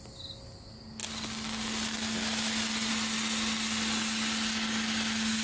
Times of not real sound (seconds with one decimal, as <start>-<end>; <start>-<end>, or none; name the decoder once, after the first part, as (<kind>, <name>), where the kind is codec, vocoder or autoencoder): none